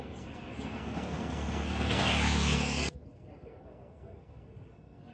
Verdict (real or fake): fake